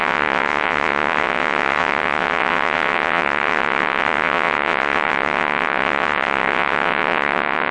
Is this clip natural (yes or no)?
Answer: no